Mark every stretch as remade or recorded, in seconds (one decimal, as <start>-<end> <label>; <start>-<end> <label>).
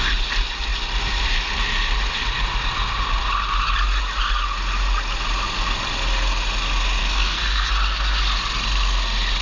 0.0-7.0 recorded; 7.0-7.7 remade; 7.7-9.4 recorded